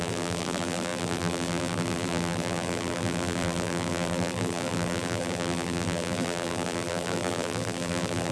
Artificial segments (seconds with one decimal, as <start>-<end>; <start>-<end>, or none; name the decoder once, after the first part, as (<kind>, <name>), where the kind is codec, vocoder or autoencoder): 0.0-8.3 (vocoder, BigVGAN v2)